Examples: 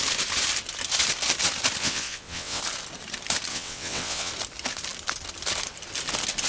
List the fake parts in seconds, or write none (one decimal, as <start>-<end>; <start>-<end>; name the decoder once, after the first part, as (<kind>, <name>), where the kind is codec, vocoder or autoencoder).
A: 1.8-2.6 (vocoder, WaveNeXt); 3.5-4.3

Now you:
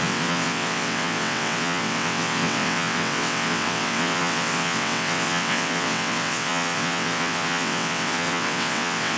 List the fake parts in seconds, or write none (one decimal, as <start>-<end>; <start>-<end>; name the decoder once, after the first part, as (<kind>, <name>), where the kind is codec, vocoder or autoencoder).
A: 0.0-9.2 (vocoder, WaveNeXt)

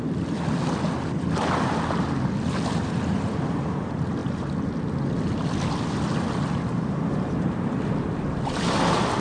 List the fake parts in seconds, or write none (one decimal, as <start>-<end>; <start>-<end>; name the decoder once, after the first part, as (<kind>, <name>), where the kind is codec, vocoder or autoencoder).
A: none